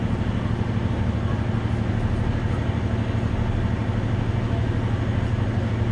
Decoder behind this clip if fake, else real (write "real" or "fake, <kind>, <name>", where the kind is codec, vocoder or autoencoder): real